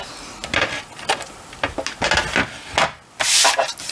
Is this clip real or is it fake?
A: real